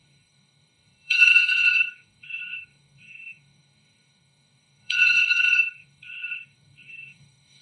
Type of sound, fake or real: fake